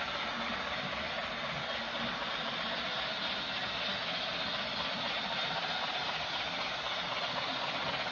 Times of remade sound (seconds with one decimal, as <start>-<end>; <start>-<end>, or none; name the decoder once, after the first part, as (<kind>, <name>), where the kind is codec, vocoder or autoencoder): none